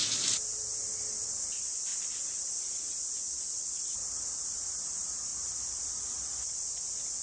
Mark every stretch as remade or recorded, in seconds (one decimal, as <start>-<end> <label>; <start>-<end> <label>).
0.0-7.2 recorded